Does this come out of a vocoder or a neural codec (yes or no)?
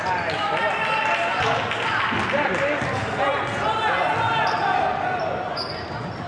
no